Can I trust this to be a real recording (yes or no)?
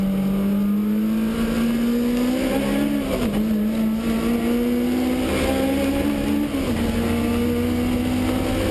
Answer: yes